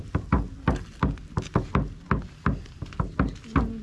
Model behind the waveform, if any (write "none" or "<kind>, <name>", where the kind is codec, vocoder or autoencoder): none